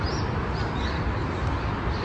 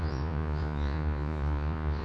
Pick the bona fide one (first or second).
first